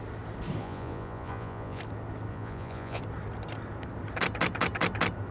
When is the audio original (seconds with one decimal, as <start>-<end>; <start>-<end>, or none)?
0.0-0.6; 1.8-2.3; 3.0-5.3